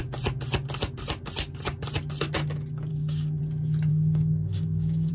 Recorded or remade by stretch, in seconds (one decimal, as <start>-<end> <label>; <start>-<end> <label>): 0.0-2.9 recorded; 2.9-3.4 remade; 3.4-3.9 recorded; 3.9-5.1 remade